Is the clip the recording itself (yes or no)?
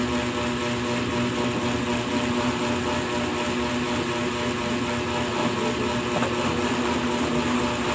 yes